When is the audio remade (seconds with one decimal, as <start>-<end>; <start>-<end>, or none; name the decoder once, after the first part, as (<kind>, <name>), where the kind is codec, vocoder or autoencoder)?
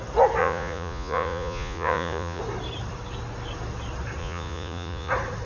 0.4-2.4 (vocoder, Vocos); 4.2-5.1